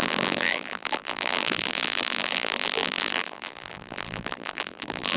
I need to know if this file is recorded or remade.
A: remade